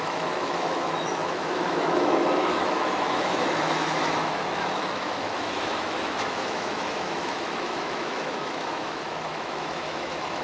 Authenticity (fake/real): fake